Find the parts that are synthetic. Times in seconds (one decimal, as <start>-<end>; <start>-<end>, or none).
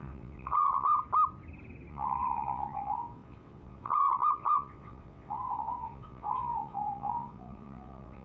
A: 0.0-1.0; 1.9-8.2